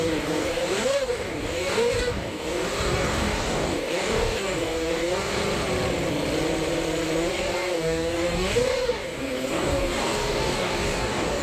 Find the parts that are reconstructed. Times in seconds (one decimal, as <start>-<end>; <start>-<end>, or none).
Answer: 0.0-5.4; 7.3-11.4